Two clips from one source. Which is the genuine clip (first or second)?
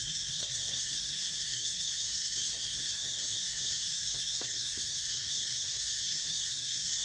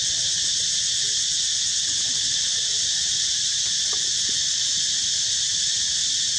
second